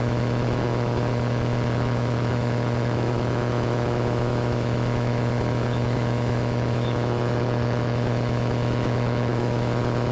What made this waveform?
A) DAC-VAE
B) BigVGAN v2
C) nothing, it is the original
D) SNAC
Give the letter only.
A